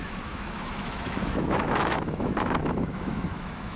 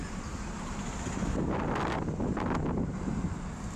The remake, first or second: first